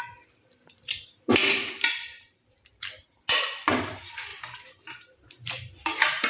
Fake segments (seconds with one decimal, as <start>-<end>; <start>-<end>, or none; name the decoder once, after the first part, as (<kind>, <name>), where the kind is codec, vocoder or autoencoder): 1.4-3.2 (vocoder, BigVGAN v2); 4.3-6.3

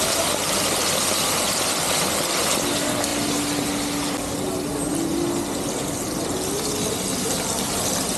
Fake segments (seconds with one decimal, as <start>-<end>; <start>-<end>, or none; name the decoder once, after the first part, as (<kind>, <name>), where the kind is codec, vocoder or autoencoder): 3.1-3.7 (vocoder, BigVGAN v2)

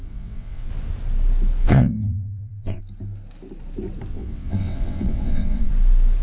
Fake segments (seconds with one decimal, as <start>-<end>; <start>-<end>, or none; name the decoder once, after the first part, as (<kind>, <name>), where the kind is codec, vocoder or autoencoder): 0.0-0.7 (vocoder, WaveNeXt); 1.6-2.8; 4.1-5.7

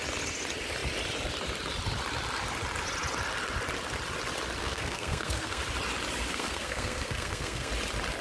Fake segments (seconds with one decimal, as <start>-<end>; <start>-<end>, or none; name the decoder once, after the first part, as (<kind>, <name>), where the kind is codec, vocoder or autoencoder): 4.6-5.6 (codec, SNAC); 6.3-7.7

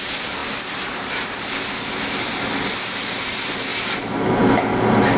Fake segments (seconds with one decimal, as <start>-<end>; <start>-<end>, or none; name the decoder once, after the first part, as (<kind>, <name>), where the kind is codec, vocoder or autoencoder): none